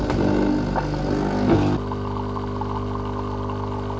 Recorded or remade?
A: recorded